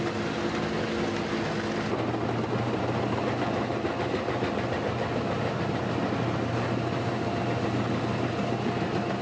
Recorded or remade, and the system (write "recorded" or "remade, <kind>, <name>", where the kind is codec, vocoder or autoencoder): recorded